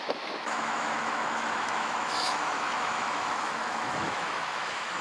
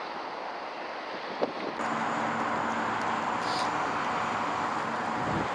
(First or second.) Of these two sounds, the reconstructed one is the first